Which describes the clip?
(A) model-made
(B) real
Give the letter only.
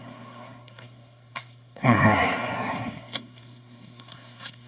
A